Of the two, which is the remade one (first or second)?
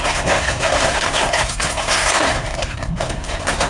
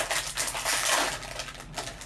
first